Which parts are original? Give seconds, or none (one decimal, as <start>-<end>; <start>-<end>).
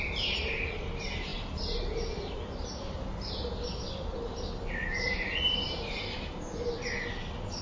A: 0.0-7.6